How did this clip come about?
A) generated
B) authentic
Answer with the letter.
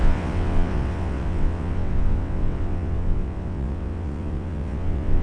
A